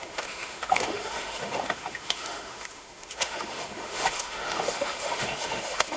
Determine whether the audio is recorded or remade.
remade